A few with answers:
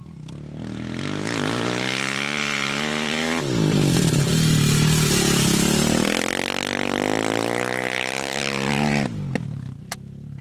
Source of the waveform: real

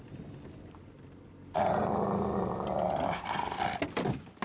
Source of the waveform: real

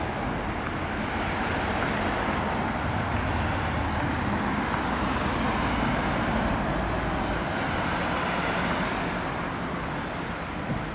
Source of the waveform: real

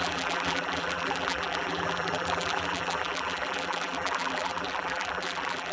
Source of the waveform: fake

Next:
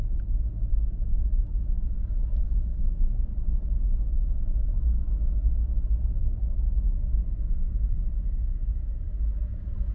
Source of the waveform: real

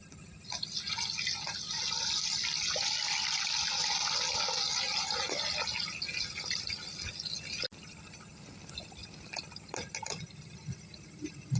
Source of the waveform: real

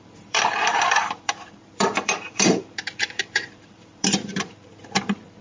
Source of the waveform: fake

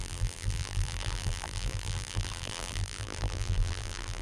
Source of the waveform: fake